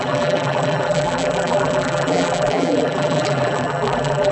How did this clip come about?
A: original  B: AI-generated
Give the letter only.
B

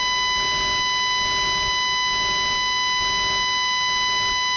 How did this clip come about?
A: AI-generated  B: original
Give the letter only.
B